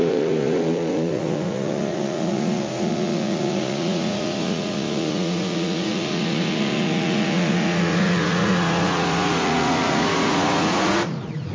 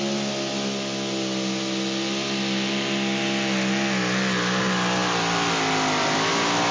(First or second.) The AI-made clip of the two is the first